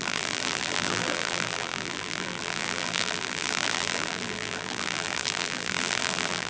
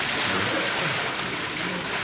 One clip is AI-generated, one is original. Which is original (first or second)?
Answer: second